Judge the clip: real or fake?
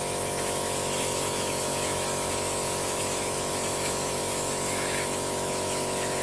fake